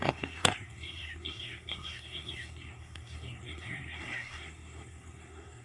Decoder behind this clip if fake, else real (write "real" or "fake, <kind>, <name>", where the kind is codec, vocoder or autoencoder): fake, codec, SNAC